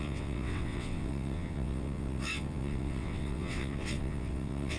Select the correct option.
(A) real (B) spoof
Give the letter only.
B